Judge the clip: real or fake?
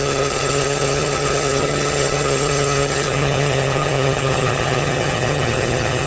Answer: fake